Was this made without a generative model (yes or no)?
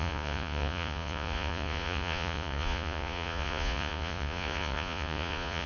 no